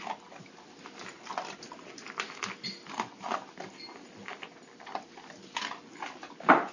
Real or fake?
real